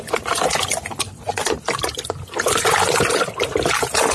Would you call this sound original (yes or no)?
yes